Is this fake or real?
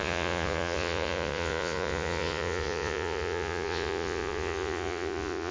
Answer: fake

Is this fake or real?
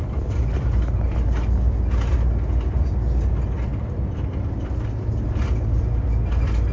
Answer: real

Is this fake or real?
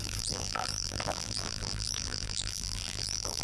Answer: fake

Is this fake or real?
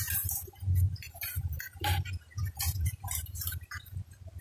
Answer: fake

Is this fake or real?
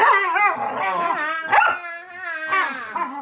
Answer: real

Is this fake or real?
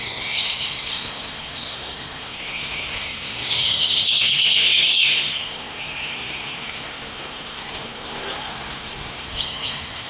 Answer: fake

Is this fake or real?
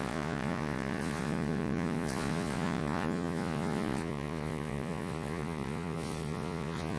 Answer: fake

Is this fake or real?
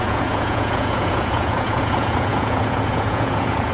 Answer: fake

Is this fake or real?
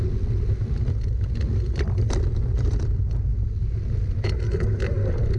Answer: real